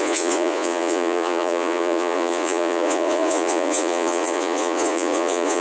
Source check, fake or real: fake